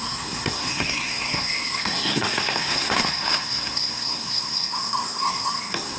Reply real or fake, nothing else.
fake